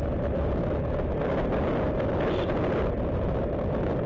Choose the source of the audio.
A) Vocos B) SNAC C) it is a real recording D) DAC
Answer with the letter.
C